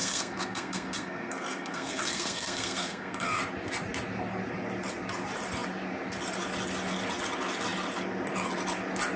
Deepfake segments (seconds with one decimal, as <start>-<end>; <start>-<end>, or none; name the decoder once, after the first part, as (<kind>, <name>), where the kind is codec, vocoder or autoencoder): 0.0-3.4 (codec, SNAC)